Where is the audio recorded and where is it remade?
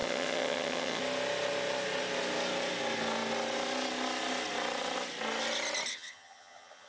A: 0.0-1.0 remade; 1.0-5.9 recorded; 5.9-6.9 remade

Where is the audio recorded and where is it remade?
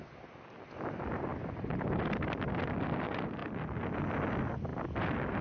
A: 0.0-5.4 recorded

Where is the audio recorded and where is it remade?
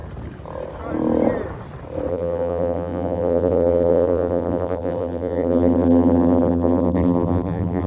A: 0.0-2.1 recorded; 2.1-7.9 remade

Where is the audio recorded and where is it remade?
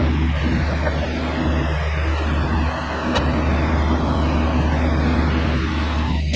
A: 0.0-5.7 recorded; 5.7-6.4 remade